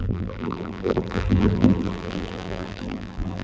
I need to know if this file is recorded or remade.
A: remade